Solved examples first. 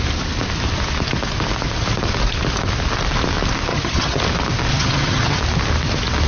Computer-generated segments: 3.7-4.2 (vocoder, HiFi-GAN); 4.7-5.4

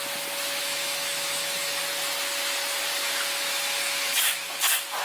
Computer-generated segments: 0.6-1.8 (autoencoder, DAC-VAE); 2.9-4.4

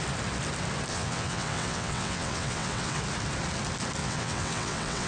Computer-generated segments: 0.9-3.0 (vocoder, WaveNeXt); 4.0-5.1

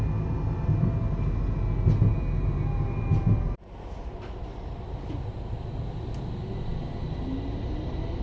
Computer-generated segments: none

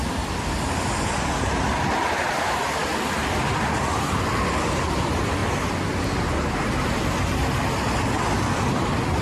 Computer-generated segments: 0.0-5.4 (vocoder, BigVGAN v2); 8.3-9.2

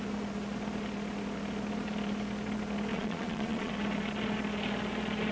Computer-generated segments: 2.9-3.7 (vocoder, Vocos)

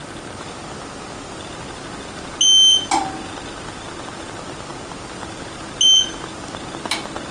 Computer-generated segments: none

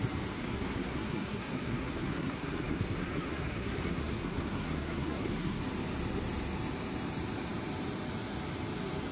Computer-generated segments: 0.4-5.6 (codec, SNAC)